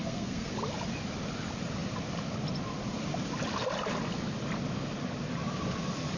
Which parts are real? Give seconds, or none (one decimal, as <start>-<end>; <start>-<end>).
0.5-6.2